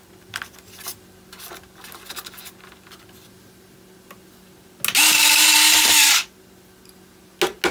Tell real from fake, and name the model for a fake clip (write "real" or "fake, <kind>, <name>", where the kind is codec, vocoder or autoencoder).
real